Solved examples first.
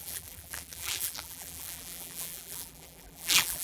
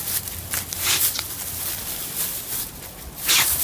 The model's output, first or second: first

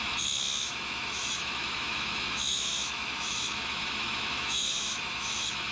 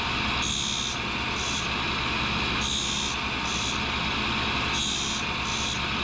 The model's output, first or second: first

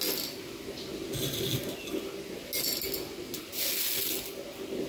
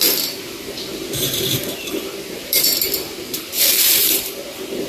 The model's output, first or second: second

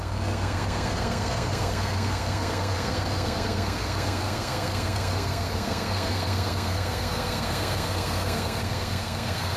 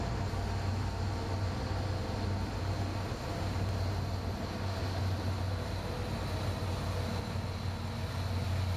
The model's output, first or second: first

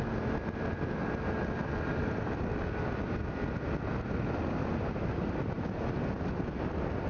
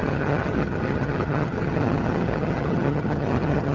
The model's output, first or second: second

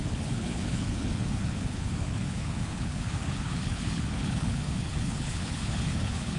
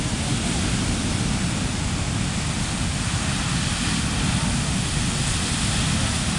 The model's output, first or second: first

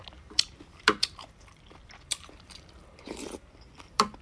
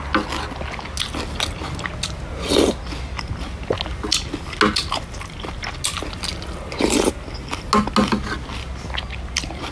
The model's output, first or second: first